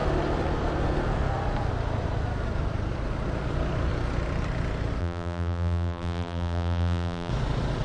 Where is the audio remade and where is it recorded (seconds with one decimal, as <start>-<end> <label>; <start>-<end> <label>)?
0.0-5.0 recorded; 5.0-7.3 remade; 7.3-7.8 recorded